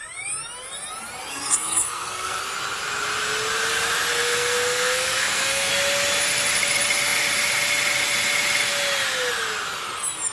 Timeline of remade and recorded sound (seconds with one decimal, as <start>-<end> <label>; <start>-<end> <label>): 0.0-1.3 recorded; 1.3-2.4 remade; 2.4-4.1 recorded; 4.1-5.7 remade; 5.7-10.3 recorded